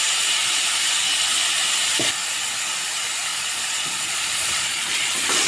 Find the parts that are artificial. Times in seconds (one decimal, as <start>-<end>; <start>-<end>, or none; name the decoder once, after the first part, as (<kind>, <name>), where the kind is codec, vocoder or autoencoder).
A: 3.3-5.5 (vocoder, Vocos)